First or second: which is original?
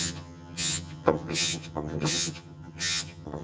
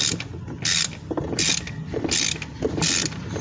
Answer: second